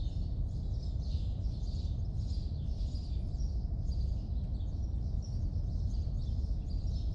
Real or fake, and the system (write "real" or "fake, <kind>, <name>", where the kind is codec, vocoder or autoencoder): real